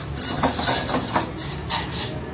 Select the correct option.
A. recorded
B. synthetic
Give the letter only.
A